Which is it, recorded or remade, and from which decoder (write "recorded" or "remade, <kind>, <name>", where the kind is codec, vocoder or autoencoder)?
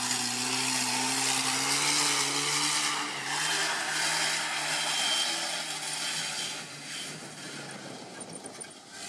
recorded